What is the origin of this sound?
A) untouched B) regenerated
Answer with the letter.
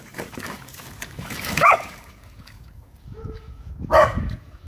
B